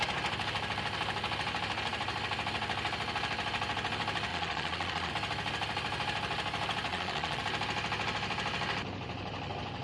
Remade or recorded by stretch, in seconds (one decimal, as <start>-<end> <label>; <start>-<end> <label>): 0.0-4.3 recorded; 4.3-5.1 remade; 5.1-6.9 recorded; 6.9-7.4 remade; 7.4-9.8 recorded